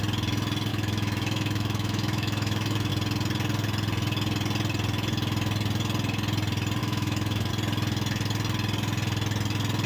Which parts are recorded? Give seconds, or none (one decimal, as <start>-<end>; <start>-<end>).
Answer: 0.0-0.7; 2.9-6.8; 7.5-9.9